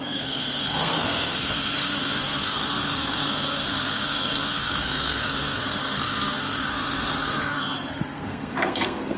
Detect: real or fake fake